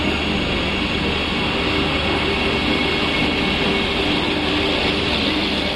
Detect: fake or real real